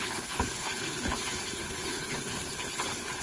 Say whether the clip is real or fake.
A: fake